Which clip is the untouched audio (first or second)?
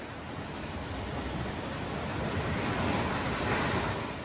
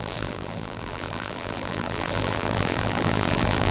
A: first